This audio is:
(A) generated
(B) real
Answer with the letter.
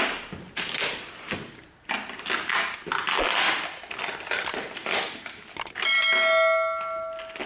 B